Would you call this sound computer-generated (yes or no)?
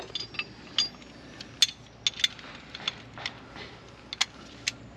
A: no